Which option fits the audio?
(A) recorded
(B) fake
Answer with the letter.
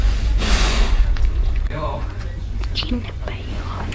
B